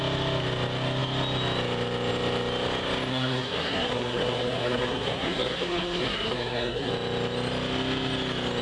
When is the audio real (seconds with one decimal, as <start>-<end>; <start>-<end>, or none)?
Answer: 0.0-3.1; 6.9-8.6